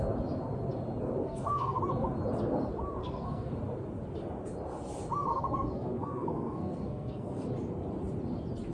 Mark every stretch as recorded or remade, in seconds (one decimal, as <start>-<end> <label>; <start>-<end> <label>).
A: 0.0-1.2 recorded; 1.2-1.8 remade; 1.8-3.0 recorded; 3.0-3.5 remade; 3.5-5.3 recorded; 5.3-7.4 remade; 7.4-8.7 recorded